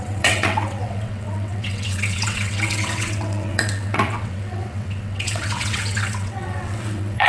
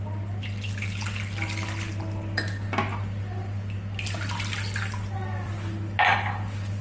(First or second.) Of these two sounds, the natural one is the second